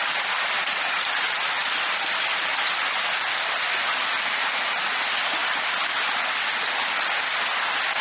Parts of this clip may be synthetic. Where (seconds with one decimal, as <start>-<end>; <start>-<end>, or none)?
none